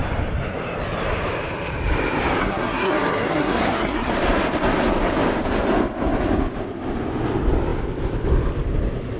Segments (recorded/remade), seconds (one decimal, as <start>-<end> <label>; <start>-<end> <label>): 0.0-2.4 recorded; 2.4-4.1 remade; 4.1-9.2 recorded